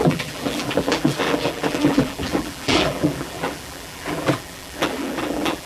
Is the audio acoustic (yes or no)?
no